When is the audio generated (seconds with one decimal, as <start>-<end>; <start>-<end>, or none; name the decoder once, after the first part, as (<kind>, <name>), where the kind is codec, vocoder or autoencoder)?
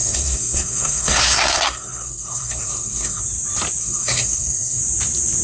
0.0-3.2 (codec, SNAC); 3.8-4.8